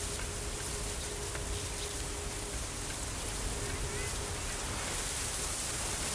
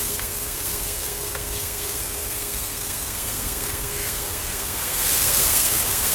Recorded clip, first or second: first